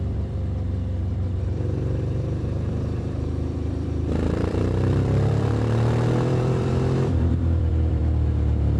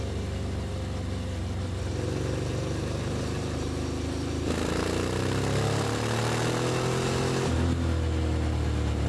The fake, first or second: first